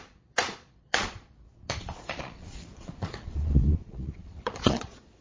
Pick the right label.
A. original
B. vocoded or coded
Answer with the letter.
B